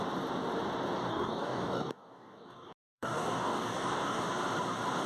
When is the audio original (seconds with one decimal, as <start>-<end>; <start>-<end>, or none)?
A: 0.0-1.1; 4.2-5.1